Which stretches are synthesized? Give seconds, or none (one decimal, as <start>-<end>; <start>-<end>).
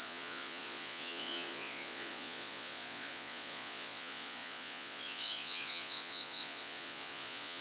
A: 0.0-7.6